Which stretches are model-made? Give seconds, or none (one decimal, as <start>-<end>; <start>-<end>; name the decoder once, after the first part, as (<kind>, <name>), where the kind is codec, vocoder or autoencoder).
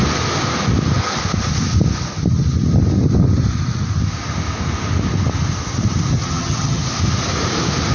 6.2-6.8 (vocoder, HiFi-GAN)